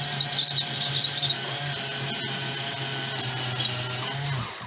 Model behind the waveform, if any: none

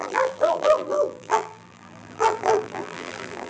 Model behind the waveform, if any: vocoder, BigVGAN v2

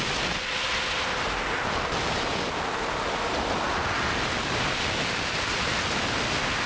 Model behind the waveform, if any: none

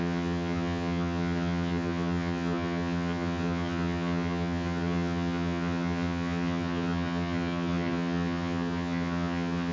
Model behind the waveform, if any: vocoder, HiFi-GAN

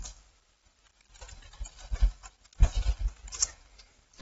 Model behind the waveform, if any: none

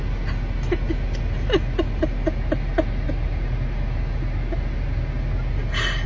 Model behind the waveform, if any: none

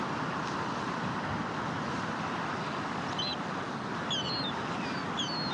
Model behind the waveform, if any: none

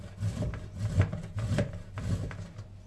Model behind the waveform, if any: none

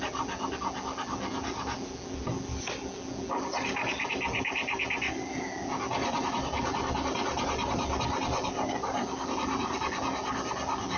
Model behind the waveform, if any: none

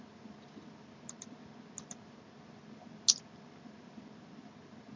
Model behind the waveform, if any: none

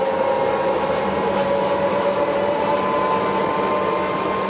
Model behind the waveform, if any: none